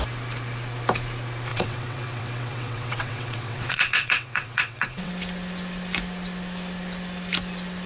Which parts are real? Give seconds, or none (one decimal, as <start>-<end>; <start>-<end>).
0.0-1.5; 5.1-7.9